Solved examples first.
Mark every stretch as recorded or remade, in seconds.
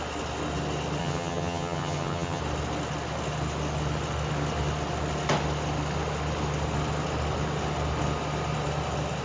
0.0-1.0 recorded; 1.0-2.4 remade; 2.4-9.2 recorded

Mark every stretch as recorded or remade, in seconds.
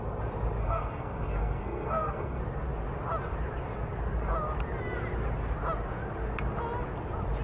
0.0-0.6 recorded; 0.6-2.4 remade; 2.4-7.4 recorded